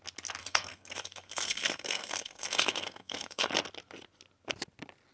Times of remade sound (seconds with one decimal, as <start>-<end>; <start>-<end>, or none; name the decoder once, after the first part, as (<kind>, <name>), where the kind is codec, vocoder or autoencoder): 0.4-3.5 (codec, SNAC)